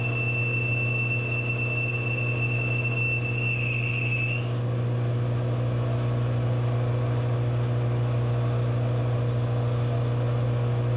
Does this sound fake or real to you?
real